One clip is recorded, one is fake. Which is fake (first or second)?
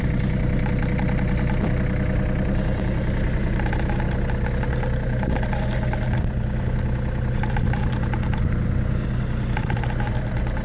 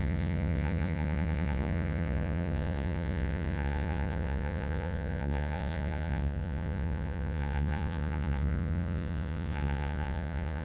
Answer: second